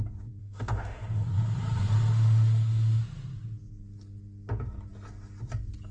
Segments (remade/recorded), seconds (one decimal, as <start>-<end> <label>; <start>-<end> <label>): 0.0-0.4 recorded; 0.4-1.2 remade; 1.2-2.1 recorded; 2.1-3.0 remade; 3.0-5.9 recorded